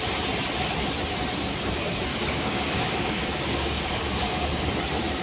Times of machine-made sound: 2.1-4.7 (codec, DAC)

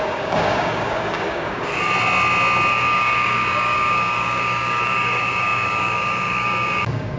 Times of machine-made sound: 0.0-1.7 (codec, DAC); 2.7-7.2

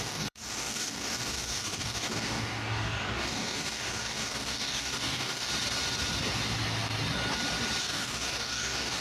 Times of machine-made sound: 0.0-5.5 (codec, DAC); 7.8-9.0

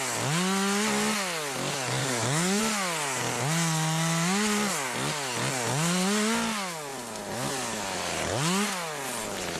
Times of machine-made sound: 2.0-2.6 (codec, DAC)

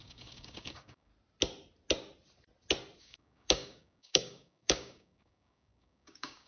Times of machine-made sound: 0.0-1.1 (codec, DAC); 3.0-6.5

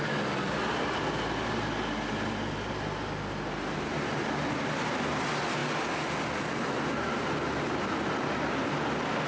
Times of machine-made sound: none

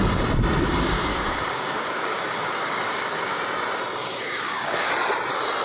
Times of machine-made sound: 1.1-3.4 (codec, DAC); 4.0-4.9

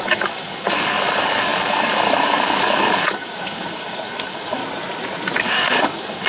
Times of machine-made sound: 0.0-4.6 (codec, DAC); 5.4-6.3